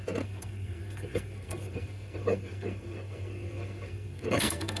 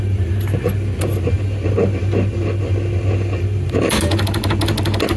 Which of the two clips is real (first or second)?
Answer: second